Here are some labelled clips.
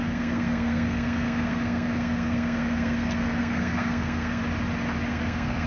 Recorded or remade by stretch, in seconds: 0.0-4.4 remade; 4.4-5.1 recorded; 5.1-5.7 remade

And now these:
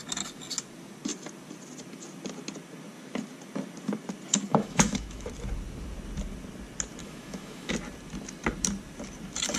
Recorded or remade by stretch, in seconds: 0.0-4.5 recorded; 4.5-5.3 remade; 5.3-7.0 recorded; 7.0-7.7 remade; 7.7-9.6 recorded

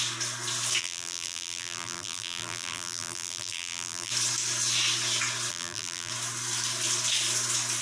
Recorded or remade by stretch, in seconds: 0.0-0.8 recorded; 0.8-4.1 remade; 4.1-5.5 recorded; 5.5-6.1 remade; 6.1-7.8 recorded